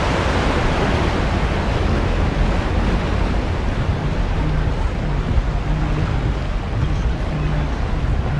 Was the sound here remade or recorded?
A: recorded